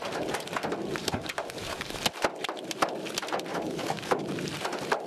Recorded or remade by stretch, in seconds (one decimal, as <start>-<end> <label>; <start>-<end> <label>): 0.0-1.0 recorded; 1.0-2.0 remade; 2.0-3.5 recorded; 3.5-4.2 remade; 4.2-5.1 recorded